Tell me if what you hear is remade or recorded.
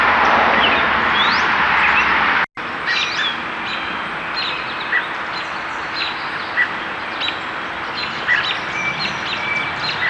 recorded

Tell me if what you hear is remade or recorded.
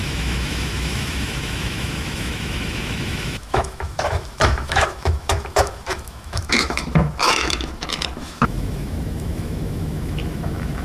remade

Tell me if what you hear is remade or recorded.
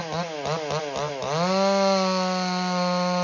recorded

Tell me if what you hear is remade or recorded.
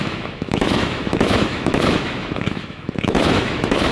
remade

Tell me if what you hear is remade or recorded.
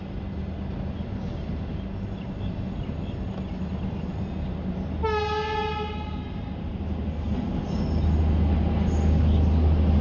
recorded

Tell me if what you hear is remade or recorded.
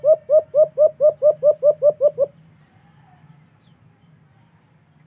recorded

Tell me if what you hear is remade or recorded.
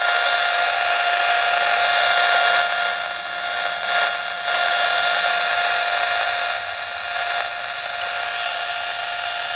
recorded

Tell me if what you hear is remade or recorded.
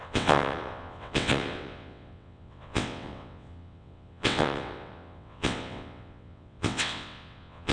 remade